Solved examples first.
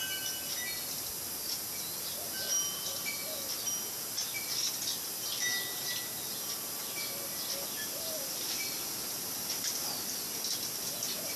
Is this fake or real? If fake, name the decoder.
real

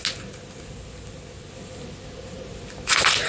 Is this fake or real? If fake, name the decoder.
real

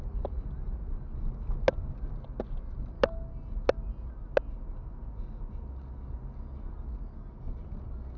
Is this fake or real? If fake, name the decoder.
real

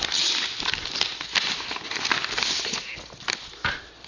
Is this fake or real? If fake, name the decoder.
real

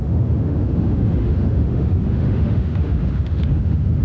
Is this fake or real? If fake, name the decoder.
fake, autoencoder, DAC-VAE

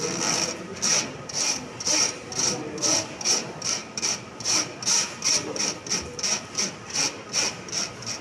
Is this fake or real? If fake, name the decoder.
real